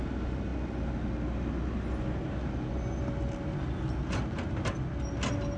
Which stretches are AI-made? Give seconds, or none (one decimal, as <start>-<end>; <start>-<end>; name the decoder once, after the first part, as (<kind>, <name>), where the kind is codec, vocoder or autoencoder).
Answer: none